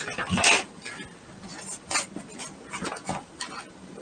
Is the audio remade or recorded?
recorded